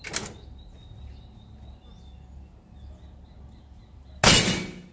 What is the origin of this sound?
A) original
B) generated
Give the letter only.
A